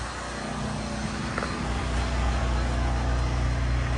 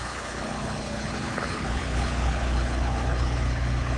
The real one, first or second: first